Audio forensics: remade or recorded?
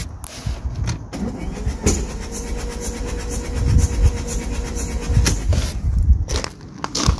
recorded